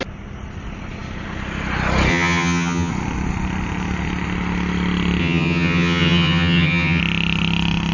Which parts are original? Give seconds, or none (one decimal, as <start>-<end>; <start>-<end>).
0.0-2.1; 2.9-5.2; 7.0-7.9